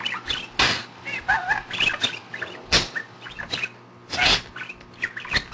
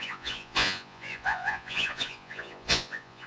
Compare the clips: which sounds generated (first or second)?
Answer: second